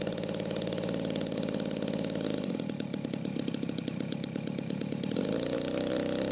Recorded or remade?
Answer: recorded